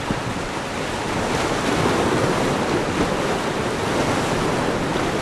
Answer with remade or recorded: recorded